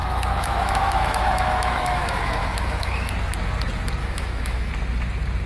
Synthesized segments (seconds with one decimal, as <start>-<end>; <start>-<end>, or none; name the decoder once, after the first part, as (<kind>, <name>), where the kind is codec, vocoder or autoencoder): 0.0-3.1 (autoencoder, DAC-VAE); 4.0-4.7

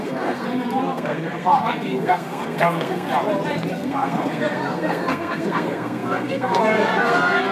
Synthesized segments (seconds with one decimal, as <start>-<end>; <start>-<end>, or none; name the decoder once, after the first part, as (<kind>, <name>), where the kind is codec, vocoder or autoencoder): 0.0-3.1 (codec, SNAC); 3.7-7.5

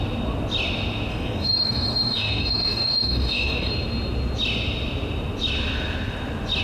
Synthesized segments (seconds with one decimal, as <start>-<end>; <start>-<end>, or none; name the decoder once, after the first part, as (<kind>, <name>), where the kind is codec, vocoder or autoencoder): 1.1-3.7 (codec, DAC)